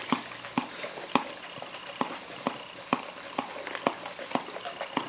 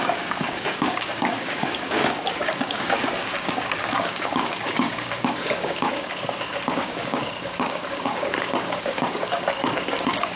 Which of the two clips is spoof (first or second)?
second